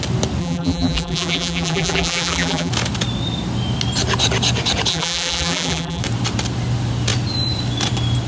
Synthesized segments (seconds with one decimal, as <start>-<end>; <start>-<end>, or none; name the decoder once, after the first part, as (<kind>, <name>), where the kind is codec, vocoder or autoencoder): 0.4-2.7 (vocoder, BigVGAN v2); 4.9-6.0